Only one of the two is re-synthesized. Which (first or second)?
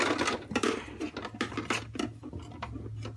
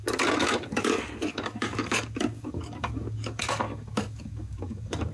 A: second